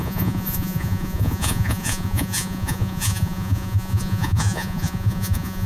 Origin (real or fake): fake